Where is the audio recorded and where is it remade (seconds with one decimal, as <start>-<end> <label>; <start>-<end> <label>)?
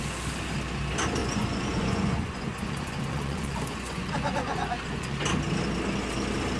0.0-1.2 recorded; 1.2-5.2 remade; 5.2-6.6 recorded